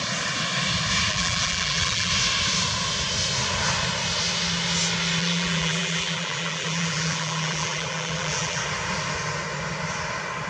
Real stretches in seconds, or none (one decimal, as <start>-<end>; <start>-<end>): 0.0-1.1; 2.1-5.2; 8.6-10.5